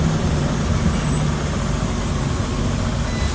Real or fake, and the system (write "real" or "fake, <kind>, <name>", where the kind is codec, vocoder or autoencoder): real